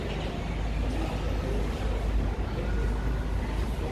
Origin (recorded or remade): recorded